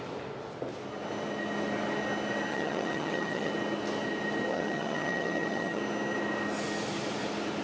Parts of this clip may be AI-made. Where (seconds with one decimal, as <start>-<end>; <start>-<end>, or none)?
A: 2.5-3.5; 4.5-5.8